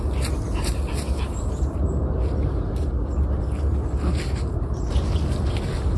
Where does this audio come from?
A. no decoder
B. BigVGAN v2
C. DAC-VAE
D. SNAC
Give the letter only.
A